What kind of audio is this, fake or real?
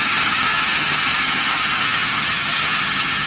fake